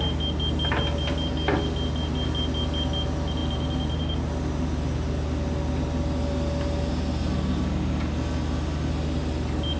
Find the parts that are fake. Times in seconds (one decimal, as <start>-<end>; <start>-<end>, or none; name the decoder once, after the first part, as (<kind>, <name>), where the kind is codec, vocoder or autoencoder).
none